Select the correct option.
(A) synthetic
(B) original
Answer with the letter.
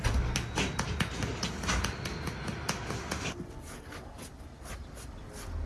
B